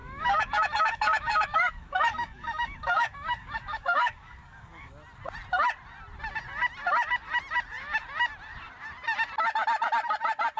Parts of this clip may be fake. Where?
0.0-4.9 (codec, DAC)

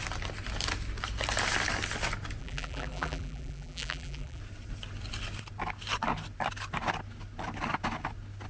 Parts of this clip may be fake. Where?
2.4-4.4 (vocoder, BigVGAN v2)

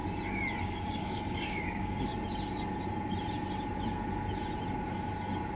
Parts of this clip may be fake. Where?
0.6-2.1 (codec, DAC)

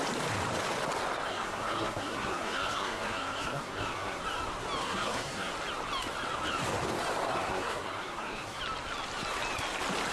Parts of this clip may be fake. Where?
1.3-4.2 (codec, SNAC); 4.8-5.5; 7.3-8.6